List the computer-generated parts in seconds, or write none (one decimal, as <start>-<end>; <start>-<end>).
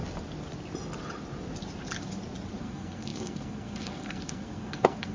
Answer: 2.6-5.1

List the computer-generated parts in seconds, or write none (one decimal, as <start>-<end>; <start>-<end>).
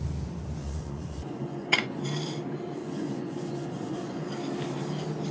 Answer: 0.6-2.0; 2.8-4.3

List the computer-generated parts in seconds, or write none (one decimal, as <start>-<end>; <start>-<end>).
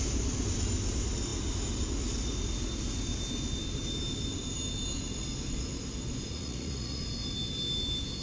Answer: 6.3-7.0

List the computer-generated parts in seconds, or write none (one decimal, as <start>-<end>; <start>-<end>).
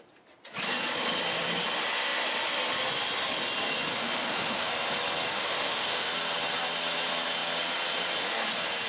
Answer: 4.0-4.7; 5.3-6.1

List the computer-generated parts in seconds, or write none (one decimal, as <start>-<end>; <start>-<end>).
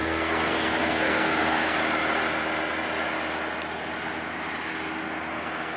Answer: 0.0-1.8; 5.3-5.8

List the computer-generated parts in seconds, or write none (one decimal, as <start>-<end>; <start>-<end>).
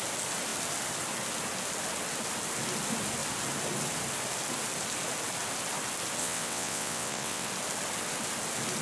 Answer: 6.2-7.5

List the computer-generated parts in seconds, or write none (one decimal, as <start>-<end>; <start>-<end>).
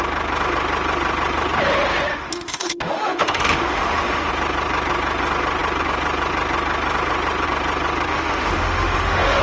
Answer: 2.1-4.3; 8.1-9.4